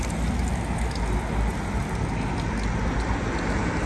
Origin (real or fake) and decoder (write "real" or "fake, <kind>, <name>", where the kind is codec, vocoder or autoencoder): real